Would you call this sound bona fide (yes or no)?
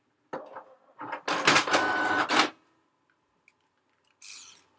yes